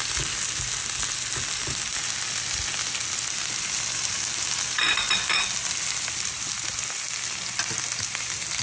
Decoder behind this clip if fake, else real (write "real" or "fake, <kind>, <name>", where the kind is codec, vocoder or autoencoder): real